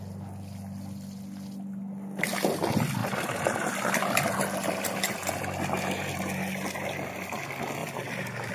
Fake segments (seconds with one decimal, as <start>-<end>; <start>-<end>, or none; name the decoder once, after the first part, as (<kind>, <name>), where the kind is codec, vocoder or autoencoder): none